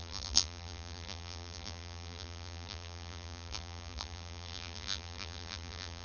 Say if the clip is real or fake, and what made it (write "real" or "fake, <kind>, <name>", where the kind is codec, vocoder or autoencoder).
fake, vocoder, BigVGAN v2